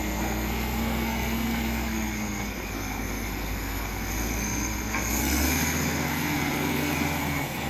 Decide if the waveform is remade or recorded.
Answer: remade